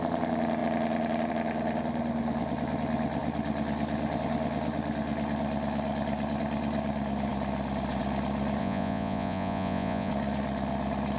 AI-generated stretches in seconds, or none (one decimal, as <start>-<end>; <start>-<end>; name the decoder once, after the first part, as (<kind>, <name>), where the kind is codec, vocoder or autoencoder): 8.6-10.1 (vocoder, Vocos)

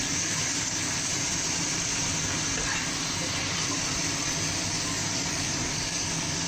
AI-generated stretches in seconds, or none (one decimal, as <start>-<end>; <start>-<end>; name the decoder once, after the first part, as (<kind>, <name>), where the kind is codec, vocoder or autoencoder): 0.0-1.1 (codec, DAC); 4.7-6.5

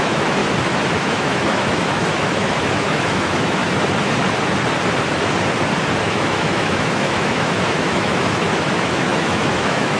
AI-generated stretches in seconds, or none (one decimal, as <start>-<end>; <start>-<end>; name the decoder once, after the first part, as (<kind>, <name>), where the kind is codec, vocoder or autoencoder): 0.0-0.4 (autoencoder, DAC-VAE); 1.0-3.6; 6.0-10.0

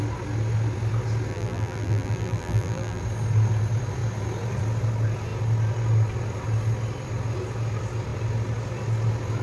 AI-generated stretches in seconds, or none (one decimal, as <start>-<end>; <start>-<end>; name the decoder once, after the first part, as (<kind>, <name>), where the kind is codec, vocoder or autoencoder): 1.3-3.0 (vocoder, BigVGAN v2)